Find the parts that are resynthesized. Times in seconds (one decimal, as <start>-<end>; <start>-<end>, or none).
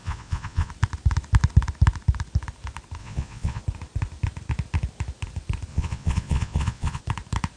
0.0-0.7; 3.0-3.6; 5.7-7.0